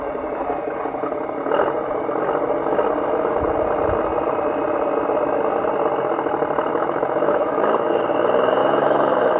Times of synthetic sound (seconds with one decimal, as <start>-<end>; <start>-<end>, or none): 6.7-8.0; 8.6-9.4